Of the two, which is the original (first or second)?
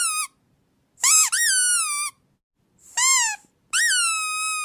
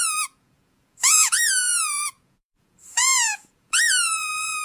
first